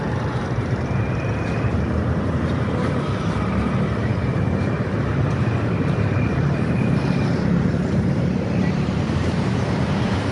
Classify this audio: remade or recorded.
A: remade